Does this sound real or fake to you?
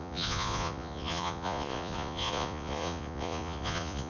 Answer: fake